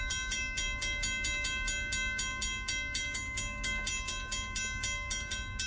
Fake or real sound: real